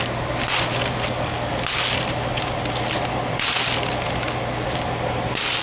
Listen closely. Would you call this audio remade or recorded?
recorded